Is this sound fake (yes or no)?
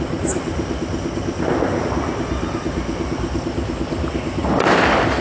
no